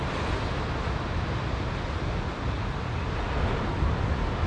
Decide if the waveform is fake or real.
real